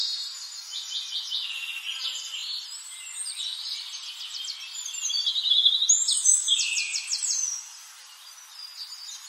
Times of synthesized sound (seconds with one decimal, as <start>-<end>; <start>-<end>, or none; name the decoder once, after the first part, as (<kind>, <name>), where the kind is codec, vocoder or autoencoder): 2.4-3.0 (vocoder, BigVGAN v2)